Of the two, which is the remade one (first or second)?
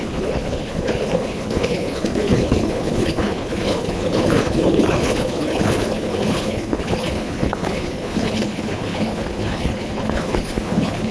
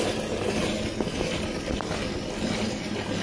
first